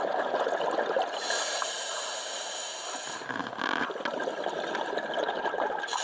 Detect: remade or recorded recorded